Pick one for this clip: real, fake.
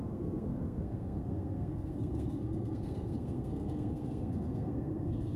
fake